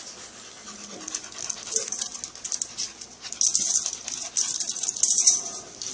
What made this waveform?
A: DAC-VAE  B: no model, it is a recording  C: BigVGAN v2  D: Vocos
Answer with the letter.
B